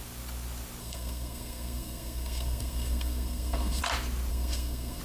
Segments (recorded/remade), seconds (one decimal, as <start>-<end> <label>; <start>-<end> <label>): 0.0-0.8 recorded; 0.8-3.8 remade; 3.8-4.3 recorded; 4.3-5.0 remade